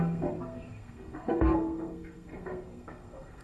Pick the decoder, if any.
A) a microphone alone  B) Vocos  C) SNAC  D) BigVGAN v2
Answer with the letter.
C